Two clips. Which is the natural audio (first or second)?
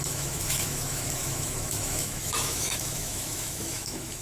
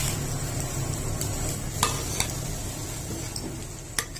second